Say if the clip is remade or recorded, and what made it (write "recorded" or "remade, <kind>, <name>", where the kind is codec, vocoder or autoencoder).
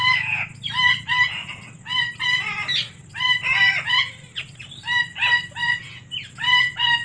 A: recorded